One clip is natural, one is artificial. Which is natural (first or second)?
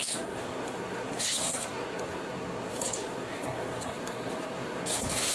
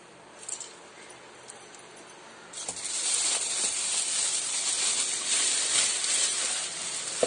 second